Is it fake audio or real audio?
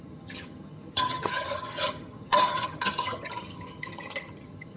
fake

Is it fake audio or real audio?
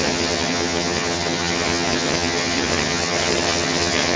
fake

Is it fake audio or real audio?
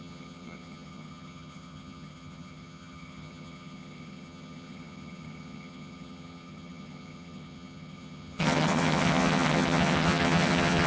fake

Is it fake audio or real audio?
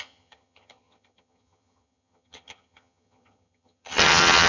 fake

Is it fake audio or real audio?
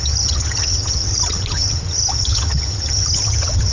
fake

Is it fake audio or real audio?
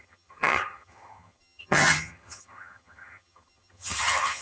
fake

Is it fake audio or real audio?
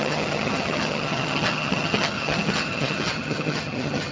fake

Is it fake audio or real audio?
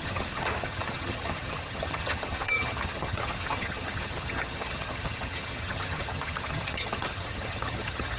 fake